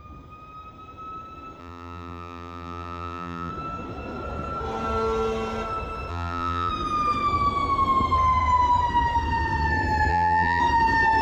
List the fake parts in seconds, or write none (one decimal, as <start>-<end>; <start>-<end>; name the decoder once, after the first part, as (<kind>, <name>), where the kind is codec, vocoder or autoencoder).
1.6-3.5 (vocoder, BigVGAN v2); 6.1-6.7; 10.1-10.6